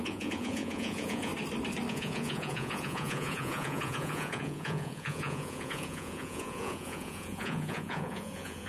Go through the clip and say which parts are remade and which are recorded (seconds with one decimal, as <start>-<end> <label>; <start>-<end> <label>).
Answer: 0.0-1.3 remade; 1.3-1.9 recorded; 1.9-8.7 remade

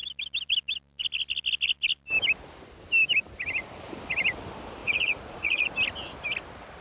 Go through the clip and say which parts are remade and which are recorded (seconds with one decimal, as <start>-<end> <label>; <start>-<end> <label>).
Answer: 0.0-4.8 recorded; 4.8-5.7 remade; 5.7-6.8 recorded

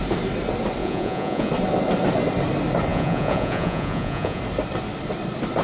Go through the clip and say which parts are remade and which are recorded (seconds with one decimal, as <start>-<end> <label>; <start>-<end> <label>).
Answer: 0.0-0.8 recorded; 0.8-1.5 remade; 1.5-2.9 recorded; 2.9-4.4 remade; 4.4-5.6 recorded

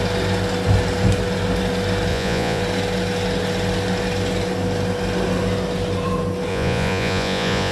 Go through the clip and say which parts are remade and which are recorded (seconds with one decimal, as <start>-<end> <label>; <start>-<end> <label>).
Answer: 0.0-2.1 recorded; 2.1-2.6 remade; 2.6-6.5 recorded; 6.5-7.7 remade

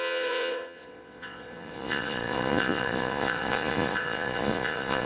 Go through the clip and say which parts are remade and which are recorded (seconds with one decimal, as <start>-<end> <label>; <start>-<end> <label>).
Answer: 0.0-5.1 remade

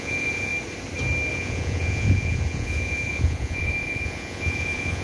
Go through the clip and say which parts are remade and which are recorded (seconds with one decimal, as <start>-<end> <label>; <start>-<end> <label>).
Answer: 0.0-0.5 remade; 0.5-1.3 recorded; 1.3-5.0 remade

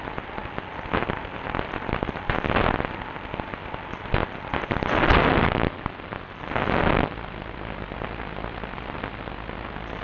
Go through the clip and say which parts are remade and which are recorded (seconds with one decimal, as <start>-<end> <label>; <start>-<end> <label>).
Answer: 0.0-10.0 recorded

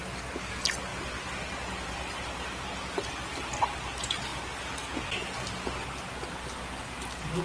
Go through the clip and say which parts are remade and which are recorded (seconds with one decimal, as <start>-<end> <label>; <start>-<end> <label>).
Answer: 0.0-7.4 recorded